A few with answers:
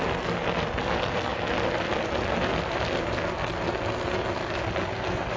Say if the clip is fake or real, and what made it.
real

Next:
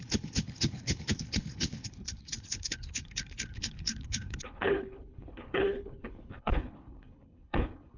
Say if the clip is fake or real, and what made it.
fake, codec, HILCodec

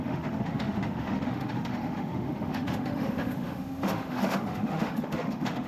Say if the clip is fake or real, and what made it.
fake, autoencoder, DAC-VAE